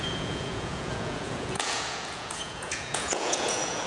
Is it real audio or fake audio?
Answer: fake